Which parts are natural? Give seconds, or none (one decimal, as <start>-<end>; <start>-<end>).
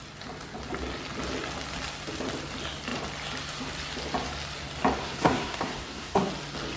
0.0-5.0; 6.3-6.8